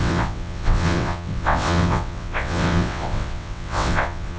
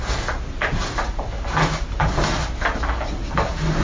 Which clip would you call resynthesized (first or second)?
first